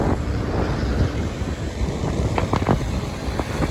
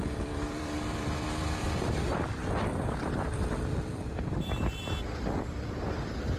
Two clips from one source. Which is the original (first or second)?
first